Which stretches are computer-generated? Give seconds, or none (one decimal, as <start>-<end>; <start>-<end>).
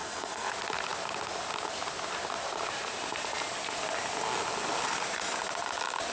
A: 0.0-0.5